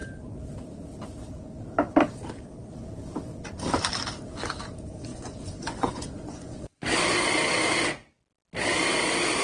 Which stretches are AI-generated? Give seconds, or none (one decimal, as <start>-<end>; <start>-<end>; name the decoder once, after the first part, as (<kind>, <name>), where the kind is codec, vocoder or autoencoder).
5.1-6.8 (vocoder, Vocos)